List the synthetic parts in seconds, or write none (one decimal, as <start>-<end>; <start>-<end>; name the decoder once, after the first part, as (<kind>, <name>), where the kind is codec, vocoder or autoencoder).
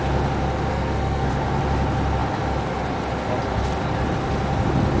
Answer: 0.7-1.3 (codec, SNAC)